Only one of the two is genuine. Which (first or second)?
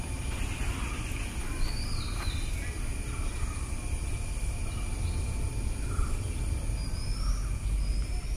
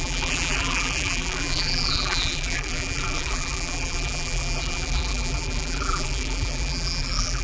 first